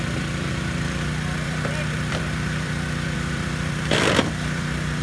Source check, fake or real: fake